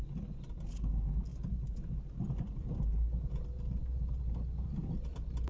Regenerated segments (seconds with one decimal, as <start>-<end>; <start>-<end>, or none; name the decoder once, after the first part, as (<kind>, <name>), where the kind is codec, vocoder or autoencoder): none